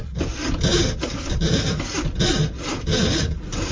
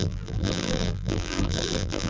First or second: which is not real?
second